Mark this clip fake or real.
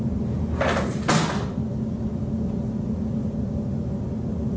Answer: real